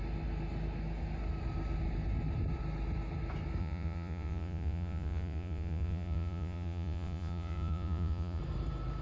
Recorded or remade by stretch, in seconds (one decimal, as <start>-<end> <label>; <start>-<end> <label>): 0.0-3.6 recorded; 3.6-8.4 remade; 8.4-9.0 recorded